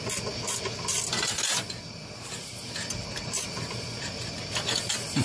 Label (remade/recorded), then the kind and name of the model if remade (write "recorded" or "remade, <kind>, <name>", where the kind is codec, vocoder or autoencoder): recorded